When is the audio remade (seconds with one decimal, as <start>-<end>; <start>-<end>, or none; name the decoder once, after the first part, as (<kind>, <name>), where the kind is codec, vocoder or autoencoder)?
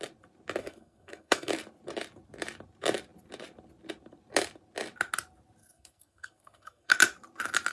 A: 0.6-1.5 (codec, SNAC); 5.6-6.9